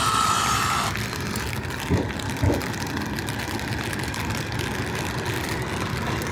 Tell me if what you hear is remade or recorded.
recorded